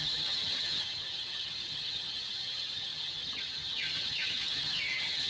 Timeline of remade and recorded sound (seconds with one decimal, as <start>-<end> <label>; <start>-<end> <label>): 0.0-5.3 remade

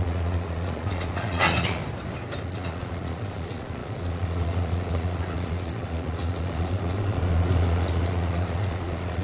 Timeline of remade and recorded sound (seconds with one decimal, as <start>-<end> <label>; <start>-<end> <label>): 0.0-1.8 remade; 1.8-2.4 recorded; 2.4-9.2 remade

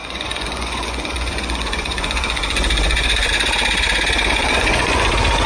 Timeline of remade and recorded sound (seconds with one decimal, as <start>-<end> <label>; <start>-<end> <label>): 0.0-3.3 remade; 3.3-4.4 recorded; 4.4-5.1 remade; 5.1-5.5 recorded

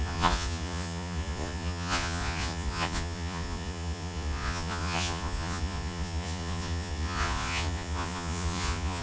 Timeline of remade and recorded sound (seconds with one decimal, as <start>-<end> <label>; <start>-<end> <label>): 0.0-9.0 remade

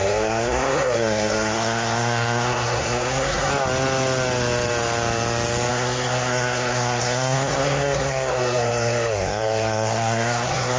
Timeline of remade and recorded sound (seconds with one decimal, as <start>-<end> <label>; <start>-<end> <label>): 0.0-3.5 remade; 3.5-5.7 recorded; 5.7-10.8 remade

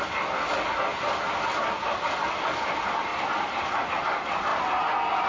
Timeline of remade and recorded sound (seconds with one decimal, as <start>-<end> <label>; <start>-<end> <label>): 0.0-4.5 remade; 4.5-5.3 recorded

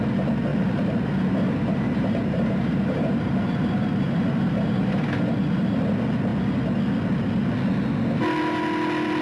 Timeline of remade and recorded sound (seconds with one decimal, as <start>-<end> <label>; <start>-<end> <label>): 0.0-0.5 recorded; 0.5-5.8 remade; 5.8-9.2 recorded

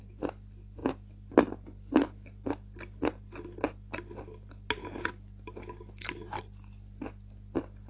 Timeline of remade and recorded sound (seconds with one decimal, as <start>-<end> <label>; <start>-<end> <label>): 0.0-7.9 recorded